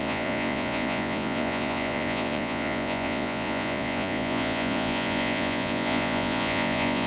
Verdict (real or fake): fake